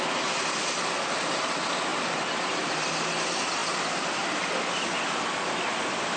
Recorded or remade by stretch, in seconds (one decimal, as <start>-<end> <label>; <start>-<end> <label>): 0.0-6.2 recorded